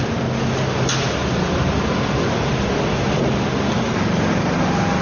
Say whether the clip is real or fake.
real